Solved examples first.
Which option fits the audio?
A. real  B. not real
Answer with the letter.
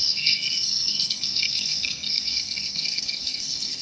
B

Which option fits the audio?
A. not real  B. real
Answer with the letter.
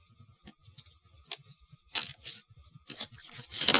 B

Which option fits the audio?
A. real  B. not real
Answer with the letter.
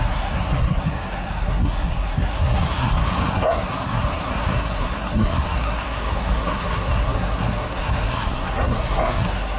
B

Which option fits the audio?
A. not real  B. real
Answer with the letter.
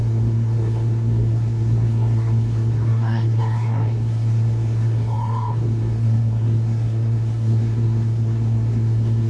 A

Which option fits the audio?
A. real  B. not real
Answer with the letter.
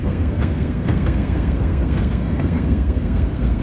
B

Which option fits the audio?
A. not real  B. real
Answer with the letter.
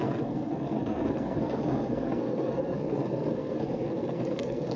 A